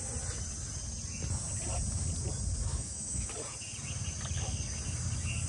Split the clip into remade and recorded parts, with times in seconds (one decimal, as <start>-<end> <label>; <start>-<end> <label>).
0.0-2.7 recorded; 2.7-3.3 remade; 3.3-5.5 recorded